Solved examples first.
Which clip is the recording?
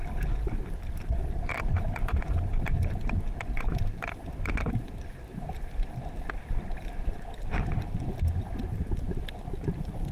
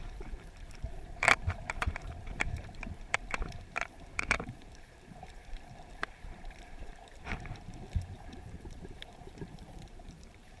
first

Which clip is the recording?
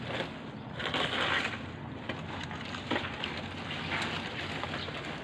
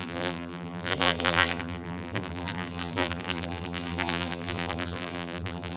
first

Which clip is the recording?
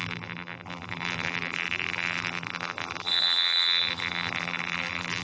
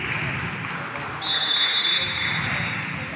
second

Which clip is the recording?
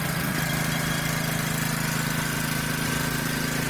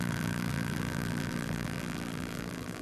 first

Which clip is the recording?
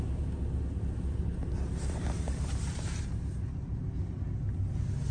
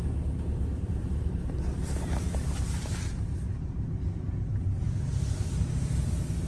first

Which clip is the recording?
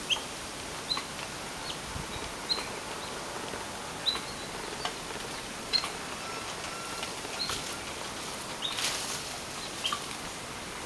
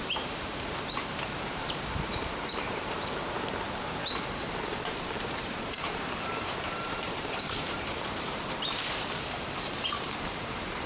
first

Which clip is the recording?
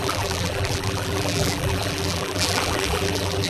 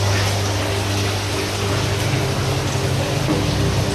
second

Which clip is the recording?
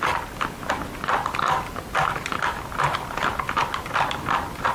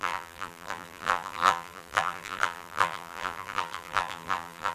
first